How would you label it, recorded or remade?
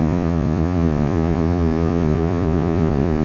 remade